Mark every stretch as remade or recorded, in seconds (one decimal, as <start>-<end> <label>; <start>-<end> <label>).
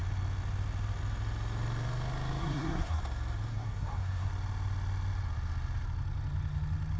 0.0-2.4 recorded; 2.4-3.0 remade; 3.0-3.5 recorded; 3.5-4.3 remade; 4.3-7.0 recorded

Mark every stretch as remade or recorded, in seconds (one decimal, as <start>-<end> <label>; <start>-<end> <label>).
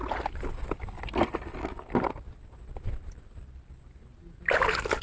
0.0-5.0 recorded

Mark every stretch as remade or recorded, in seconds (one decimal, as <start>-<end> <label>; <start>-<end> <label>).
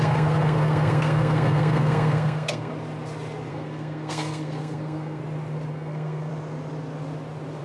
0.0-2.7 remade; 2.7-3.5 recorded; 3.5-5.2 remade; 5.2-5.7 recorded; 5.7-6.3 remade; 6.3-7.6 recorded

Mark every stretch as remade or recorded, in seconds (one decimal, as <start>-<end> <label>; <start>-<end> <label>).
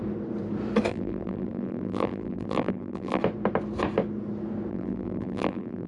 0.0-0.9 recorded; 0.9-3.2 remade; 3.2-4.7 recorded; 4.7-5.9 remade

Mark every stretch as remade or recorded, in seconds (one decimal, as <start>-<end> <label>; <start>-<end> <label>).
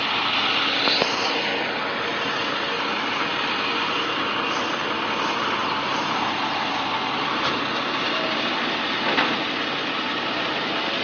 0.0-11.0 recorded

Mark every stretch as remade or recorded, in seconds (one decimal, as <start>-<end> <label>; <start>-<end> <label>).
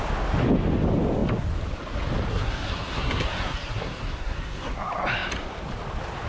0.0-2.3 recorded; 2.3-4.7 remade; 4.7-6.3 recorded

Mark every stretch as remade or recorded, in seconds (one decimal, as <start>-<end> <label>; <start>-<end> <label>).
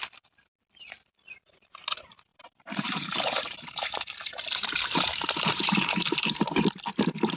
0.0-2.3 recorded; 2.3-6.6 remade; 6.6-7.4 recorded